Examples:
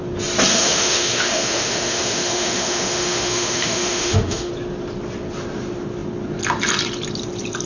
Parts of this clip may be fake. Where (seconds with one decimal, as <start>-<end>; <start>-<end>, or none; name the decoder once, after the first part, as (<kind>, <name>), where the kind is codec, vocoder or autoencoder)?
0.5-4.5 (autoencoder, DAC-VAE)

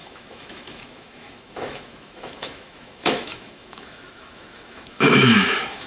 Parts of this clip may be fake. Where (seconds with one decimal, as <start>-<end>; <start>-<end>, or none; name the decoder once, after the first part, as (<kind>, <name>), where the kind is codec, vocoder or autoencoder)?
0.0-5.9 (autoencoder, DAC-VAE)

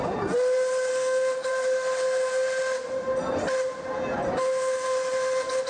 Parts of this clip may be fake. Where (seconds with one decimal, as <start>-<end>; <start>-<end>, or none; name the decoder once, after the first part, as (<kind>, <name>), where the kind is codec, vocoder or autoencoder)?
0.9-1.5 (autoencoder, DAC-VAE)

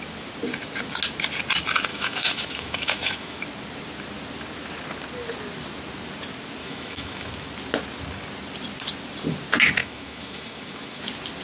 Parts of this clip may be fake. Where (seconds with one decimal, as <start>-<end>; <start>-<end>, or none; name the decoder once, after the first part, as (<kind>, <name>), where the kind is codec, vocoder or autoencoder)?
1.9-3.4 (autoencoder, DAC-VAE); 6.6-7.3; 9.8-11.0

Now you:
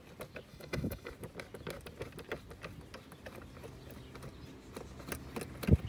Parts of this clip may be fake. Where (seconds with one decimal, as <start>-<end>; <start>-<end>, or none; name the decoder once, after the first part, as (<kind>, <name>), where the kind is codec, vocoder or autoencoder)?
0.5-1.1 (autoencoder, DAC-VAE)

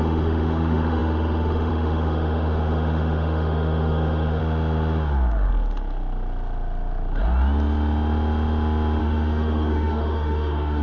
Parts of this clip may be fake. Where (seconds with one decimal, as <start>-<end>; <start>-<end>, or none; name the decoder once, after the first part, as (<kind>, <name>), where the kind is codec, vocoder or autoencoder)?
0.0-4.4 (autoencoder, DAC-VAE); 9.0-10.8

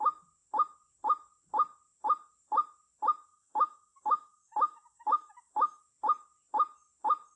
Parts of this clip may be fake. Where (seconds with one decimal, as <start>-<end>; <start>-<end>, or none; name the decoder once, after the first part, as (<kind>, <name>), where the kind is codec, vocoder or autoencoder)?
3.3-5.8 (autoencoder, DAC-VAE)